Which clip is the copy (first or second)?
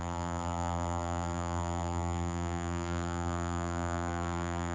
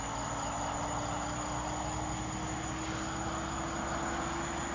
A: first